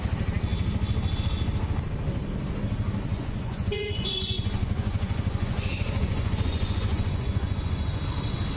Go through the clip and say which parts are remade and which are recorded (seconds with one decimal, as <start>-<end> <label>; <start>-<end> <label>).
0.0-3.1 recorded; 3.1-8.0 remade; 8.0-8.6 recorded